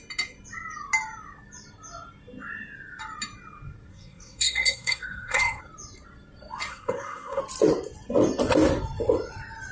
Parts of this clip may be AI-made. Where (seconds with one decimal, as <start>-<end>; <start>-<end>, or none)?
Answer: 3.9-5.6; 6.7-7.4